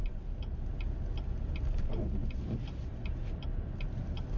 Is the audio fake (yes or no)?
no